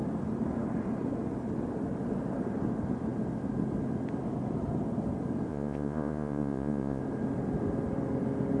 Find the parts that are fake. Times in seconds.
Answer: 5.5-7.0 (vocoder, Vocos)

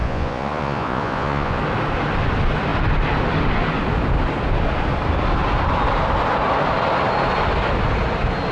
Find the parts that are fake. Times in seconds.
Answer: 0.0-1.6 (vocoder, Vocos)

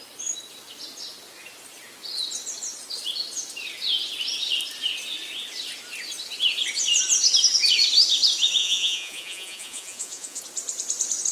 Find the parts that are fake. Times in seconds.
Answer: 8.6-10.4 (vocoder, Vocos)

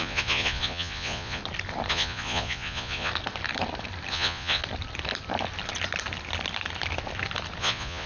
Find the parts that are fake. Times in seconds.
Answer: 0.0-1.4 (vocoder, Vocos); 1.9-3.1; 4.1-4.6; 7.6-8.1

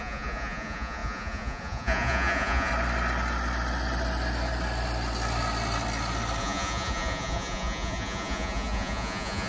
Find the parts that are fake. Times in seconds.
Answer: 0.0-2.7 (vocoder, Vocos); 6.4-9.5

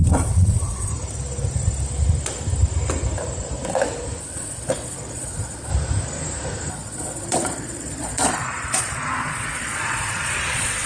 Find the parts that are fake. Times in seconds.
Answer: 0.0-0.9 (vocoder, Vocos); 4.2-5.7; 6.7-10.9

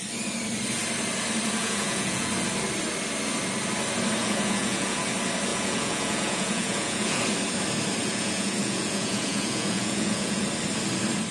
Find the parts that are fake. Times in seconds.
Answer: 1.6-2.3 (vocoder, Vocos); 4.2-5.0; 5.5-7.2; 8.0-10.4

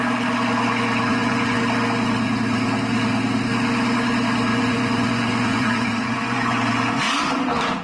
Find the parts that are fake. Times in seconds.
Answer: 1.1-1.6 (vocoder, Vocos); 4.5-7.0